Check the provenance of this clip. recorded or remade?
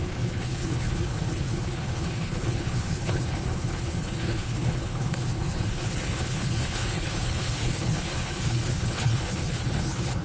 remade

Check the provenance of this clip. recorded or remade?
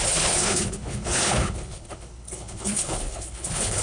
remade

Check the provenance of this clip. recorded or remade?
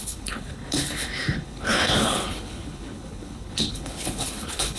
remade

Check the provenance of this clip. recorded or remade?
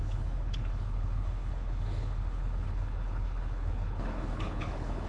remade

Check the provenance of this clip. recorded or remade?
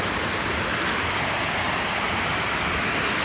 recorded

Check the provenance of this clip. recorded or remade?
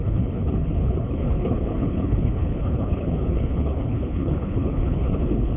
remade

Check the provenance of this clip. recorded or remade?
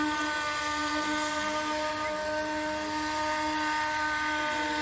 recorded